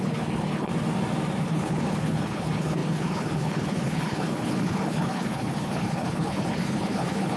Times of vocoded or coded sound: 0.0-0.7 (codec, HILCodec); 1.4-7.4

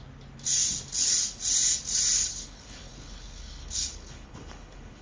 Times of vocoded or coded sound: 2.2-5.0 (codec, HILCodec)

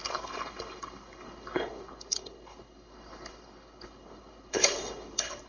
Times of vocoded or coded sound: 0.0-5.5 (codec, HILCodec)

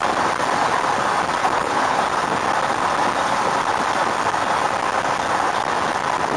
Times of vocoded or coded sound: 1.4-2.0 (codec, HILCodec)

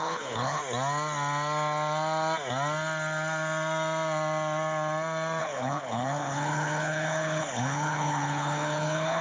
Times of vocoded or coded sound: 0.0-0.6 (codec, HILCodec); 5.4-9.2

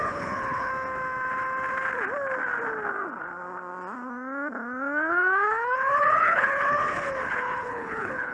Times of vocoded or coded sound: 0.0-0.7 (codec, HILCodec); 5.1-8.3